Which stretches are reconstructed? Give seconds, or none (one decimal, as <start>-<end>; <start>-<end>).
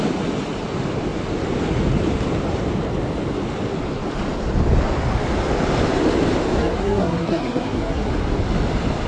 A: 6.6-8.1